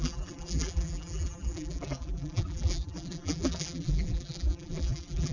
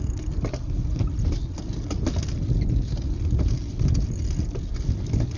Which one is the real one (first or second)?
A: second